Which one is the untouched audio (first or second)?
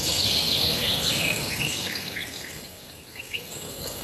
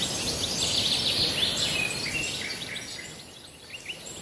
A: second